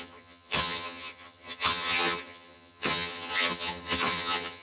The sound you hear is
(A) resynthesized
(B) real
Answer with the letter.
A